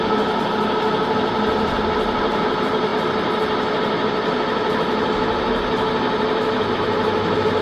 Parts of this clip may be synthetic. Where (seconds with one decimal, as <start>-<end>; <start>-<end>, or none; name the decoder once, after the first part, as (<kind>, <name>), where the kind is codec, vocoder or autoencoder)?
none